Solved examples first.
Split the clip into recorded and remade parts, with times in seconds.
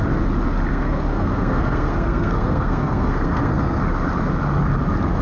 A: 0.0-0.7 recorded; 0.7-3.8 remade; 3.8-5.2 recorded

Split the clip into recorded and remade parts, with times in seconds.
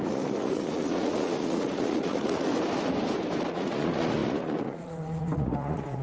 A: 0.0-2.5 remade; 2.5-3.5 recorded; 3.5-6.0 remade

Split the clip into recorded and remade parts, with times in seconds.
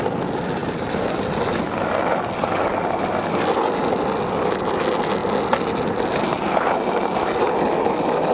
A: 0.0-8.3 recorded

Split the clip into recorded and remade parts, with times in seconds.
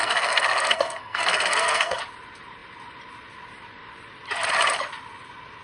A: 0.0-2.0 remade; 2.0-5.6 recorded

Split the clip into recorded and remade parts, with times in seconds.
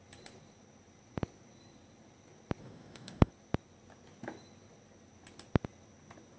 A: 0.0-2.6 recorded; 2.6-3.3 remade; 3.3-6.4 recorded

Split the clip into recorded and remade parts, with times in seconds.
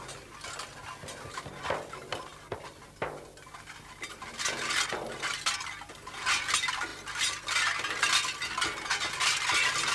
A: 0.0-9.9 recorded